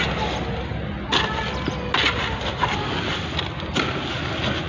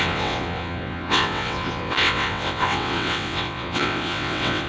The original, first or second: first